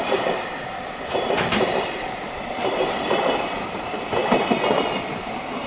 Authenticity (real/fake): fake